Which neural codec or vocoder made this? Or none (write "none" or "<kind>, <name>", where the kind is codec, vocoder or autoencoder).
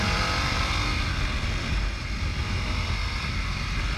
none